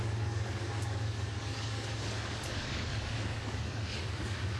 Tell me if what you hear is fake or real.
fake